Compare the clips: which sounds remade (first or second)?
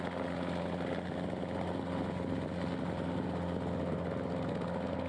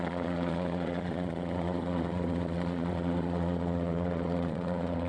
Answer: second